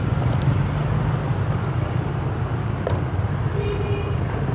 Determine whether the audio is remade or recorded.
recorded